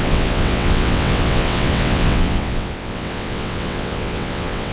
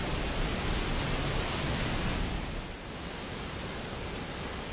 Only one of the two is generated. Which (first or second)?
first